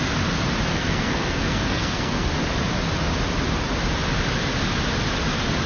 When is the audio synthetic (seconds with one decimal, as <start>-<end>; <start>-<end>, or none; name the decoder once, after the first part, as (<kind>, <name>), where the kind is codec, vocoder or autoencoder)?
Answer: 0.7-2.3 (codec, SNAC)